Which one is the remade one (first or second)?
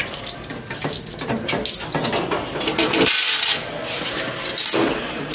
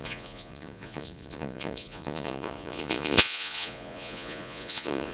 second